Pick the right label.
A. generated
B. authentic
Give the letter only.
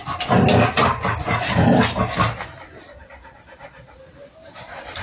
B